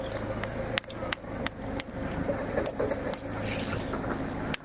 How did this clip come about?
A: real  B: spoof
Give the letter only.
A